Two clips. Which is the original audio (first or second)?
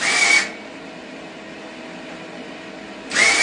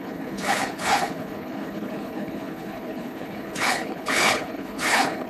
first